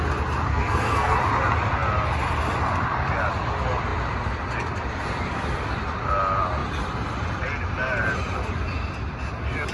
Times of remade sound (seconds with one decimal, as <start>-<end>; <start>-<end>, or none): 0.5-1.2